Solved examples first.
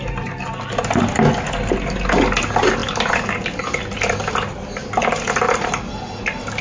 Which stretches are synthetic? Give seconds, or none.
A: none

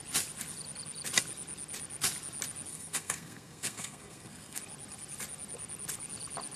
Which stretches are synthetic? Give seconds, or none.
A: 2.7-4.6 (codec, SNAC)

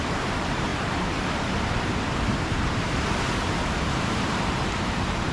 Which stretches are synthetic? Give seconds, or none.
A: 0.0-5.3 (vocoder, BigVGAN v2)

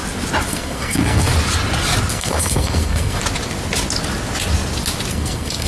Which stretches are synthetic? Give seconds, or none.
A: 0.5-1.3 (codec, SNAC); 2.1-3.2; 5.1-5.7

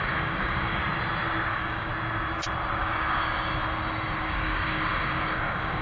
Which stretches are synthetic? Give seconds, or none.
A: 0.0-0.8 (codec, DAC); 1.5-1.9; 2.8-3.6; 4.2-5.8

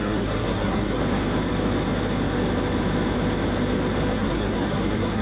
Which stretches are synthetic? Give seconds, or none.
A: 0.0-1.0 (codec, SNAC); 4.1-5.2

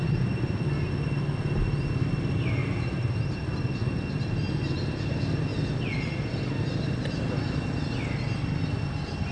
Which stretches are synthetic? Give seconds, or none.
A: 2.6-3.2 (vocoder, BigVGAN v2)

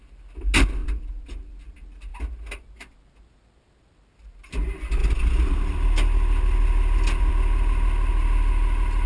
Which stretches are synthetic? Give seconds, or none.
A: none